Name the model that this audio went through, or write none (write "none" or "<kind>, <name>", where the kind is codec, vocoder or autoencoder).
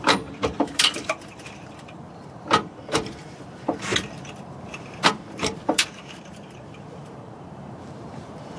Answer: vocoder, BigVGAN v2